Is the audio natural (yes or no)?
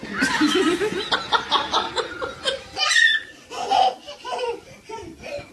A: yes